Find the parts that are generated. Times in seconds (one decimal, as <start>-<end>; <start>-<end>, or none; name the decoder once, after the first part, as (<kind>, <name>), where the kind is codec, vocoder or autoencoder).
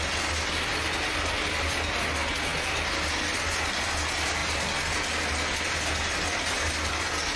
none